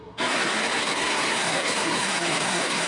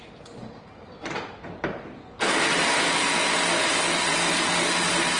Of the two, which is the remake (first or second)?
first